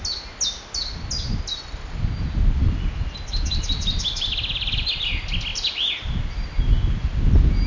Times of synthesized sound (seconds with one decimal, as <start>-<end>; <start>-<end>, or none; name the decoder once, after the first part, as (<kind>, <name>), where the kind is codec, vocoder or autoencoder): none